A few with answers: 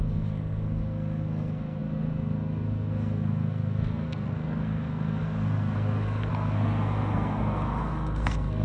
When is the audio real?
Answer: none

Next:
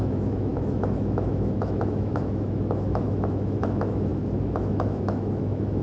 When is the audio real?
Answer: none

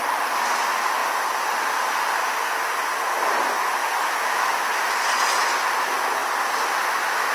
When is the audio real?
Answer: 0.0-3.8; 4.5-7.3

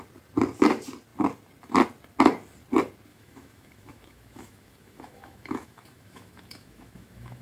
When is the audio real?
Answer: 0.0-3.1

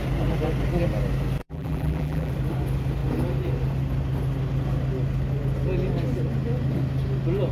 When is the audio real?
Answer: 0.0-1.4; 2.3-7.5

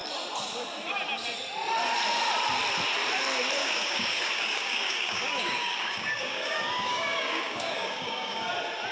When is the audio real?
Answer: 0.0-3.6; 8.5-8.9